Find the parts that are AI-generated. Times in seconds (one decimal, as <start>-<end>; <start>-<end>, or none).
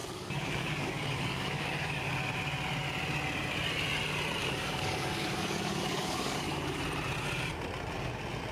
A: 0.0-2.1; 4.4-6.8